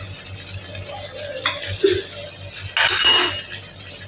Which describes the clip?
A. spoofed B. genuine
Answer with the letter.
B